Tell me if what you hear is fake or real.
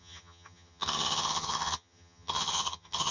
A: fake